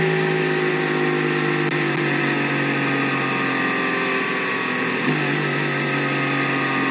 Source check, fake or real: real